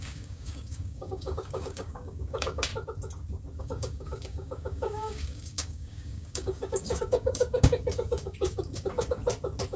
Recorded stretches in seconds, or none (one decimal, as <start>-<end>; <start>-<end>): 2.7-3.6; 9.2-9.8